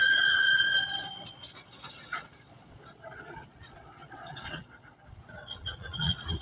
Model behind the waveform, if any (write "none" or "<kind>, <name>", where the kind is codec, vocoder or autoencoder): vocoder, Vocos